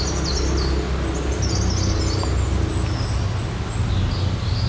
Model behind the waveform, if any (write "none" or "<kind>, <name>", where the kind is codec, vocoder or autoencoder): none